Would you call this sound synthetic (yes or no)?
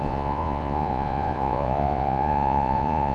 yes